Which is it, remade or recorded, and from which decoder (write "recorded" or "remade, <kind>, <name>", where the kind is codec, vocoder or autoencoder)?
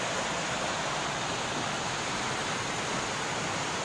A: recorded